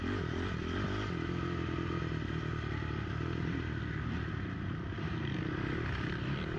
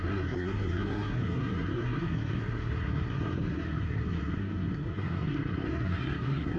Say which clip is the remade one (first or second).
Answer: second